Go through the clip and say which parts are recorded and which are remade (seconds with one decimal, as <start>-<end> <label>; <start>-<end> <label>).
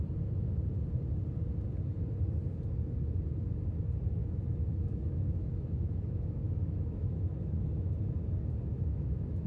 0.0-4.2 recorded; 4.2-7.9 remade; 7.9-8.7 recorded; 8.7-9.5 remade